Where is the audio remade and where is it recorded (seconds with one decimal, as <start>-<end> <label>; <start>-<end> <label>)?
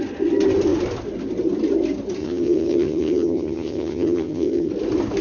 0.0-2.2 recorded; 2.2-4.7 remade; 4.7-5.2 recorded